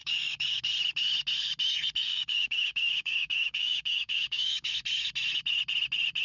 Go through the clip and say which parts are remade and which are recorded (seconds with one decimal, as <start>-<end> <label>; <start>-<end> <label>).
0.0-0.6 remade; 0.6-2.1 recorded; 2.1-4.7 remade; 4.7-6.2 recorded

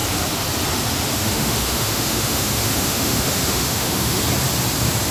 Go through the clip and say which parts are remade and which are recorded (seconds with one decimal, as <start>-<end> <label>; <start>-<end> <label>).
0.0-1.1 recorded; 1.1-4.2 remade; 4.2-5.1 recorded

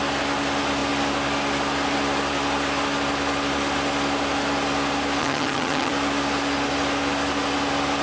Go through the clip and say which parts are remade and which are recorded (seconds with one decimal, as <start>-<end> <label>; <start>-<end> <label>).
0.0-5.2 recorded; 5.2-5.9 remade; 5.9-8.0 recorded

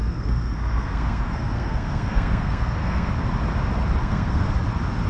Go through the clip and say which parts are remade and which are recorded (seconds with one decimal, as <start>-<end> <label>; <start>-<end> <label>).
0.0-3.1 remade; 3.1-4.0 recorded; 4.0-4.5 remade; 4.5-5.1 recorded

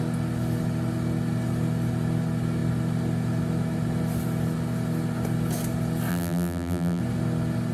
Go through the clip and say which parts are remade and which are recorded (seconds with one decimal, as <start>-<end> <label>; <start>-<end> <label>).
0.0-6.1 recorded; 6.1-7.0 remade; 7.0-7.7 recorded

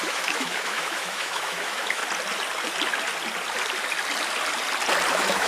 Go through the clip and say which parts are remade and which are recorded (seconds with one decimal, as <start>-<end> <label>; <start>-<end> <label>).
0.0-2.0 remade; 2.0-5.1 recorded; 5.1-5.5 remade